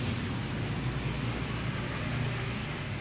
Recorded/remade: recorded